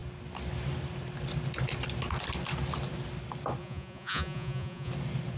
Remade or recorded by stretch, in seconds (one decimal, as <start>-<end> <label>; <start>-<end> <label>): 0.0-3.6 recorded; 3.6-4.9 remade; 4.9-5.4 recorded

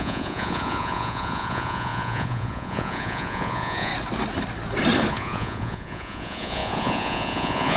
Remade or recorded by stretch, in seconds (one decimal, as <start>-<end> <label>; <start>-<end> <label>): 0.0-3.9 remade; 3.9-5.1 recorded; 5.1-7.8 remade

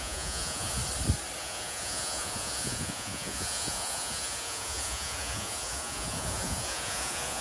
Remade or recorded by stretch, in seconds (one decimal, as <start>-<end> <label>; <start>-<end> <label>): 0.0-0.8 remade; 0.8-1.4 recorded; 1.4-7.4 remade

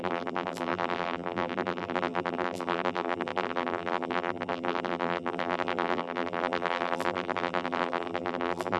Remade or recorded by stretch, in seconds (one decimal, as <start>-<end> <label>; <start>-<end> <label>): 0.0-8.8 remade

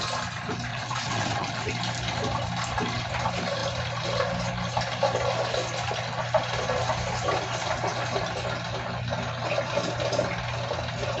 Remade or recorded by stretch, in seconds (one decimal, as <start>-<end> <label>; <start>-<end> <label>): 0.0-0.7 recorded; 0.7-1.6 remade; 1.6-11.2 recorded